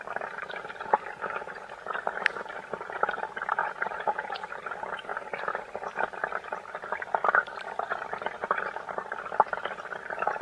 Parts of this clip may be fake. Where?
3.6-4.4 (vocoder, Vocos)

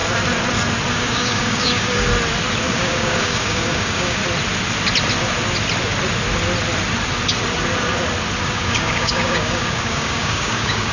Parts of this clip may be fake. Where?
0.9-2.1 (codec, DAC); 2.7-4.2; 8.4-10.9